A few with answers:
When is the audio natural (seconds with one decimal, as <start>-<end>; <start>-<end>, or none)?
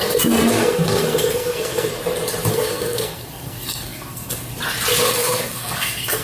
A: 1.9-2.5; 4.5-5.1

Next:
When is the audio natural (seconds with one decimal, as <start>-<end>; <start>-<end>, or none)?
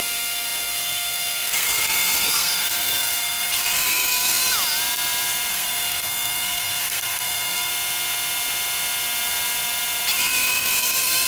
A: 4.4-5.5; 7.7-10.2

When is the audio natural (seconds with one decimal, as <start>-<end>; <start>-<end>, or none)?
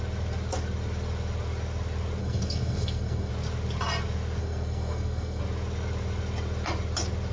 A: 0.0-2.2; 3.3-4.4; 5.4-7.3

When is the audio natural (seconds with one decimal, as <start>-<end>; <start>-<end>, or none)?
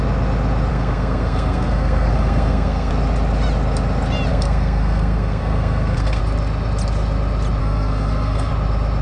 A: 0.0-0.7; 2.9-4.3; 6.2-7.6; 8.5-9.0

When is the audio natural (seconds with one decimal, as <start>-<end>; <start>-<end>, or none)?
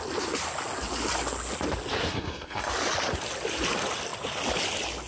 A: 0.0-2.0; 2.7-5.1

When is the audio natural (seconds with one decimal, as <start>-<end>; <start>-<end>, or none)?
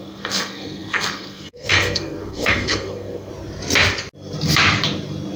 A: 3.3-5.4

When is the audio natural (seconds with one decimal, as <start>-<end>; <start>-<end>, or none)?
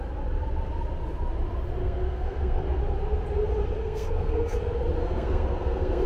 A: 0.0-1.8; 2.8-3.8; 4.6-5.0